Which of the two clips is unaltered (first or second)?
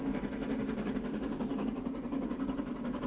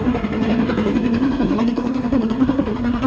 first